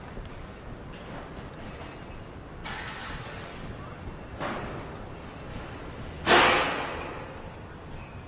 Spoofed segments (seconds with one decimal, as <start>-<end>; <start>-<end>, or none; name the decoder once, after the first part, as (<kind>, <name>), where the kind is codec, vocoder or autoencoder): 5.5-6.4 (autoencoder, DAC-VAE)